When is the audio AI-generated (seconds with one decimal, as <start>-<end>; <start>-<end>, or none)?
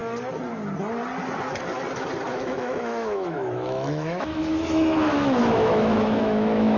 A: 2.3-6.8